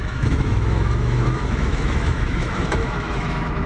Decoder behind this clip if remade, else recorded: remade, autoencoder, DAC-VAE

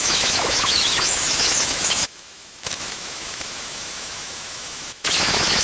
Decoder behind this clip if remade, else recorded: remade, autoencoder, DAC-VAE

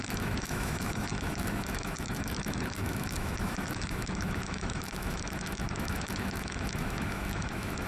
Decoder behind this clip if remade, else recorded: remade, autoencoder, DAC-VAE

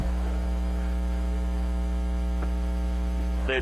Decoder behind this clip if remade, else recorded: remade, autoencoder, DAC-VAE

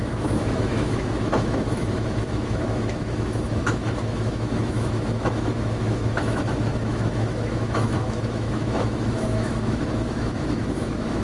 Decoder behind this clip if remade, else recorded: remade, autoencoder, DAC-VAE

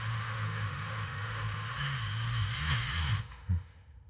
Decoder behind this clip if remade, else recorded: remade, autoencoder, DAC-VAE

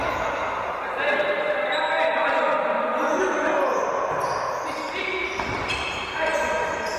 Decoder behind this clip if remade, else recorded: recorded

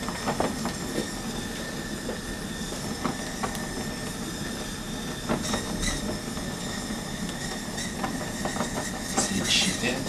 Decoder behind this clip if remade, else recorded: recorded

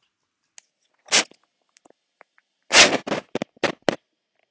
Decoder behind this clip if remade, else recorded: recorded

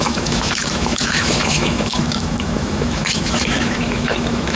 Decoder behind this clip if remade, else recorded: remade, autoencoder, DAC-VAE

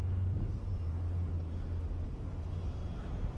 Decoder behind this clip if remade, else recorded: recorded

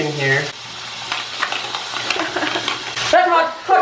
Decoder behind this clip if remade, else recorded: recorded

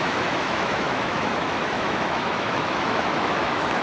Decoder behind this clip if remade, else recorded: remade, autoencoder, DAC-VAE